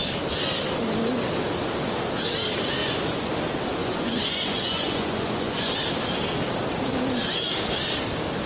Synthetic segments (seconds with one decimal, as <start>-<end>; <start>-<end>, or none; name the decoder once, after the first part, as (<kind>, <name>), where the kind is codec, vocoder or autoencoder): 2.8-3.3 (vocoder, Vocos); 3.8-5.7